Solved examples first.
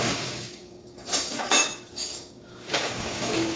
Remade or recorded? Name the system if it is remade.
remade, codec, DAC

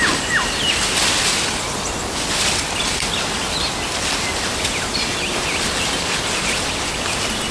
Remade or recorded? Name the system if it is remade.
recorded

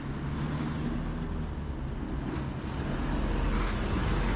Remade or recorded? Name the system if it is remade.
recorded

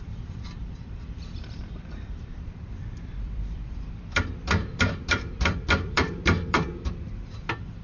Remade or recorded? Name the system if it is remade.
remade, vocoder, BigVGAN v2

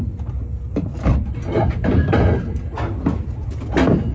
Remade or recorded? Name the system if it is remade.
recorded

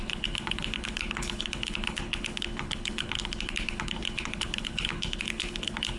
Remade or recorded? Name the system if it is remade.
remade, codec, HILCodec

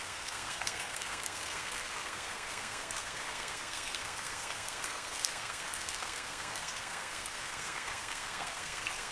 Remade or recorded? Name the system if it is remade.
remade, codec, SNAC